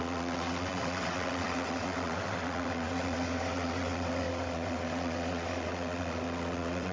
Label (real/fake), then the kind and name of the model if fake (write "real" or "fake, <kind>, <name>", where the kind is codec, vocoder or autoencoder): fake, vocoder, WaveNeXt